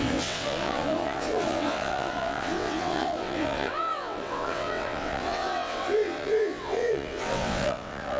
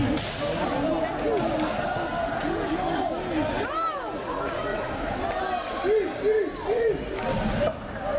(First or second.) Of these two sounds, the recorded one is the second